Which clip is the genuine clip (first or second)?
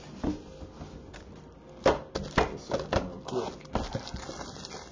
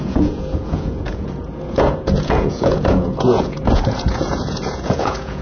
first